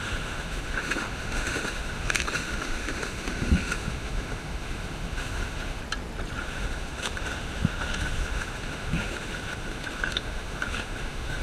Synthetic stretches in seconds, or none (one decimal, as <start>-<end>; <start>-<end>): 0.0-5.8; 6.4-11.4